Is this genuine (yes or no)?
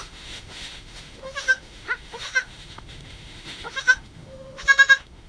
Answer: no